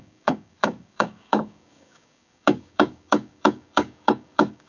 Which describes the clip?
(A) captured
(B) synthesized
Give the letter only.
B